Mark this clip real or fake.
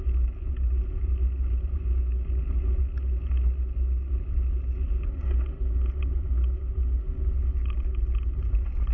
real